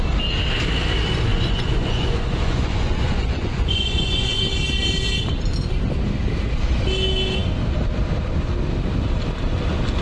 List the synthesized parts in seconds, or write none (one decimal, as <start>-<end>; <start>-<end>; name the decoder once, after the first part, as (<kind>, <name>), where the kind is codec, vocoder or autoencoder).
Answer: 1.3-4.4 (vocoder, Vocos)

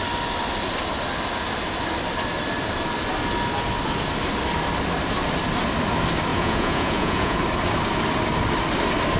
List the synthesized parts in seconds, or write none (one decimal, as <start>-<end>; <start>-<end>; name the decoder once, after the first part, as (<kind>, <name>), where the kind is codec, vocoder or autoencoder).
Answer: 6.3-7.4 (vocoder, Vocos)

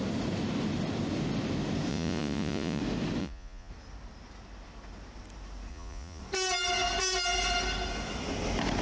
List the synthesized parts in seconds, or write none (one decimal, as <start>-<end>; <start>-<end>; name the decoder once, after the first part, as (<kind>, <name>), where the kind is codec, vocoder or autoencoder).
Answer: 1.9-2.8 (vocoder, Vocos); 3.2-3.7; 5.7-6.2

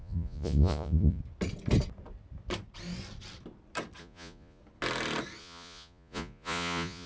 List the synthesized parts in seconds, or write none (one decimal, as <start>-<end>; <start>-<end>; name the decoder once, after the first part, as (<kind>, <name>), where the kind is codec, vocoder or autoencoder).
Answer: 0.0-1.2 (vocoder, Vocos); 4.0-4.6; 5.4-7.1

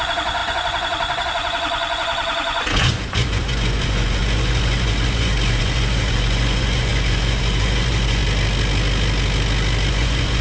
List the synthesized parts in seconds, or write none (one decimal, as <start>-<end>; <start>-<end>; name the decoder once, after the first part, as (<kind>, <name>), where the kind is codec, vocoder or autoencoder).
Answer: 0.0-8.2 (vocoder, Vocos); 9.9-10.4

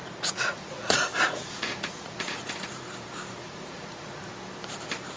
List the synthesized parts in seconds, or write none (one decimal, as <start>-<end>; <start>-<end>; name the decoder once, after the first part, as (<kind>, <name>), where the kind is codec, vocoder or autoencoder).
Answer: 0.0-2.9 (vocoder, Vocos); 3.4-4.2

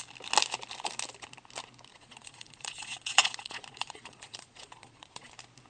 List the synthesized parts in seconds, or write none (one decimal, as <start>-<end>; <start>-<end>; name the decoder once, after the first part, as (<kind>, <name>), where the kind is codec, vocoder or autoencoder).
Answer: 1.9-5.3 (vocoder, Vocos)

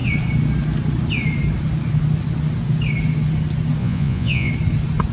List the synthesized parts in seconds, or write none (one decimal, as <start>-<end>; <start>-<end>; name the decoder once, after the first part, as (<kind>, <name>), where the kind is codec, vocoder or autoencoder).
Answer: 3.8-4.5 (vocoder, Vocos)